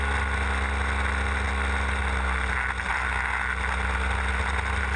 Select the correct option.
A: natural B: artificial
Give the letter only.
A